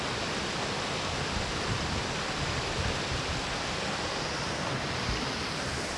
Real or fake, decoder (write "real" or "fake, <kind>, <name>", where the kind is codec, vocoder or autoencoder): real